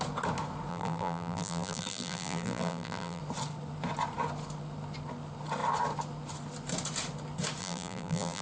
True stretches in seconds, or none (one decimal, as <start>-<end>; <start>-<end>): 0.0-0.7; 3.2-7.6